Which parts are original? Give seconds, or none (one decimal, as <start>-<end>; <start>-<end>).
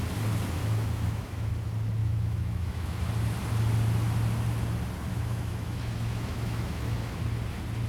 0.0-0.6; 1.5-2.0; 3.0-5.1; 7.2-7.9